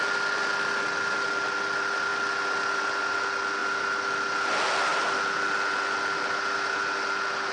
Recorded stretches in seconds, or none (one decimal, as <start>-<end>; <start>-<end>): 0.0-7.5